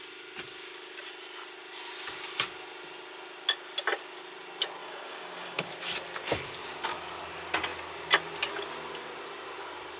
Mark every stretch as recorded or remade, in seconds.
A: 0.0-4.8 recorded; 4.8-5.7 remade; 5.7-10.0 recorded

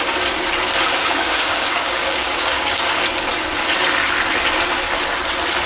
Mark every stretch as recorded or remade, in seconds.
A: 0.0-1.0 recorded; 1.0-3.0 remade; 3.0-5.7 recorded